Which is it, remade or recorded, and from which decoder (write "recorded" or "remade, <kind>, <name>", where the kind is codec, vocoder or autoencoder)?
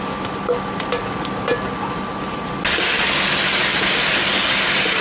recorded